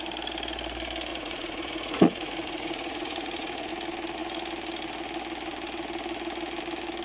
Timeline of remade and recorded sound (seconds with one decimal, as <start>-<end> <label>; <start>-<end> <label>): 0.0-1.1 recorded; 1.1-3.7 remade; 3.7-7.0 recorded